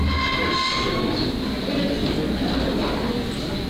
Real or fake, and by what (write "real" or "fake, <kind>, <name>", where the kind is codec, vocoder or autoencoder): real